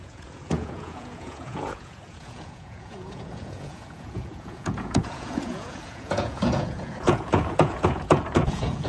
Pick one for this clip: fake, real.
fake